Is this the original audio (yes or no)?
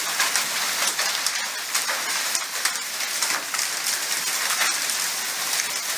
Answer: yes